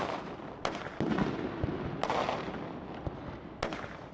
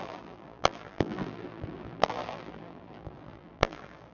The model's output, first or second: second